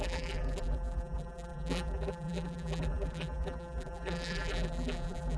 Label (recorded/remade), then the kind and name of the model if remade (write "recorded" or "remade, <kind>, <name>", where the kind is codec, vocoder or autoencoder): remade, vocoder, BigVGAN v2